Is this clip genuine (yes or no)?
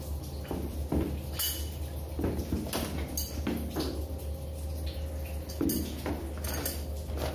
yes